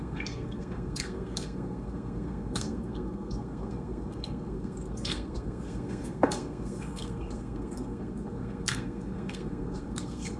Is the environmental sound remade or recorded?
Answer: remade